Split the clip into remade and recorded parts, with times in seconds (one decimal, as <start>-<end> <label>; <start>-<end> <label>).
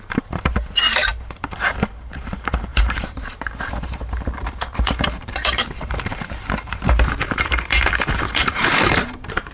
0.0-9.5 remade